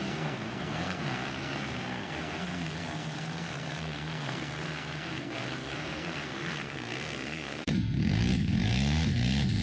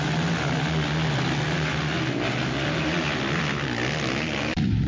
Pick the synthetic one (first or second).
first